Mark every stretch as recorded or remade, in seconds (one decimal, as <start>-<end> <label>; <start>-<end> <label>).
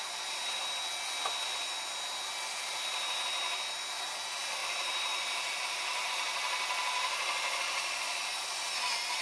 0.0-0.6 remade; 0.6-2.5 recorded; 2.5-3.2 remade; 3.2-4.6 recorded; 4.6-6.1 remade; 6.1-8.2 recorded; 8.2-8.7 remade; 8.7-9.2 recorded